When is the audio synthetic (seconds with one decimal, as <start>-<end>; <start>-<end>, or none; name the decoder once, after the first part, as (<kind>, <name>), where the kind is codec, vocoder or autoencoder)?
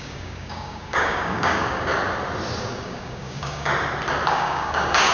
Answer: 0.0-1.9 (codec, DAC); 2.6-3.7; 4.3-5.1